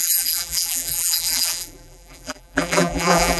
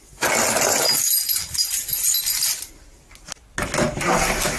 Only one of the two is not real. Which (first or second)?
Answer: first